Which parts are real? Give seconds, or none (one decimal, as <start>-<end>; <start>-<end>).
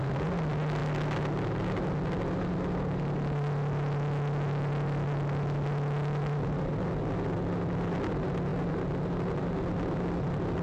0.0-10.6